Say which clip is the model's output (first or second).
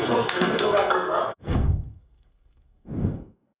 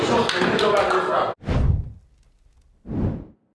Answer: first